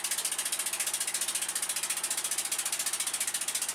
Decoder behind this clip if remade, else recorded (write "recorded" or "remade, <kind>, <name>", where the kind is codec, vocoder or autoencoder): recorded